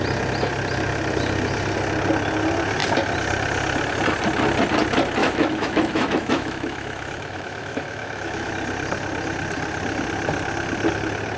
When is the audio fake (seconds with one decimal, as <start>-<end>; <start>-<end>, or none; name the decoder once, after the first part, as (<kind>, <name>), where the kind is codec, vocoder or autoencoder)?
5.2-8.5 (autoencoder, DAC-VAE)